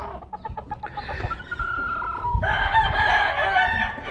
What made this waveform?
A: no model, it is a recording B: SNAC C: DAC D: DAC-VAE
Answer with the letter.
A